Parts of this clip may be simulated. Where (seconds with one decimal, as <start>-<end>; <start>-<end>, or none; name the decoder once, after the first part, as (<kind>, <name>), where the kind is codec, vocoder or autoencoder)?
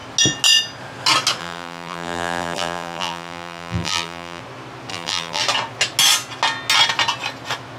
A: 1.4-4.4 (vocoder, BigVGAN v2); 4.9-5.4